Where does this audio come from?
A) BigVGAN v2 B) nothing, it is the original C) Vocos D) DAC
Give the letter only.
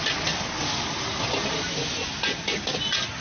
B